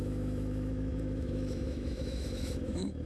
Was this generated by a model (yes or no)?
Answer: yes